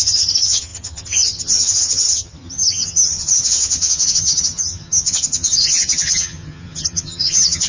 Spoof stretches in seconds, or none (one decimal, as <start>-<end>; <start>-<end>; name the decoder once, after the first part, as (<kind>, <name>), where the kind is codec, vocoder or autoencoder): 0.0-7.7 (vocoder, HiFi-GAN)